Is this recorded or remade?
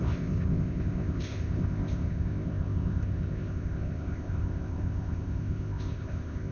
remade